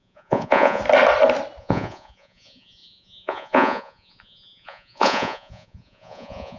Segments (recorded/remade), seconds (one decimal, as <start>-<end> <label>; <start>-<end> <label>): 0.0-0.8 remade; 0.8-1.6 recorded; 1.6-6.6 remade